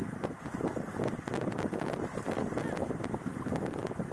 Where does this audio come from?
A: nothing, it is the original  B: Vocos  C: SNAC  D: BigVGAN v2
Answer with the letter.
A